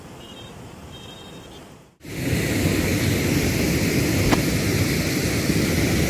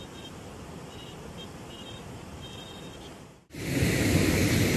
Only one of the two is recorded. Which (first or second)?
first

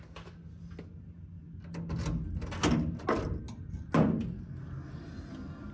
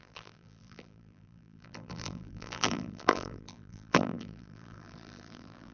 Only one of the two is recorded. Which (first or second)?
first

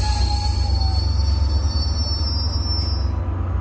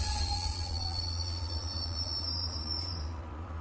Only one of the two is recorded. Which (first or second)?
first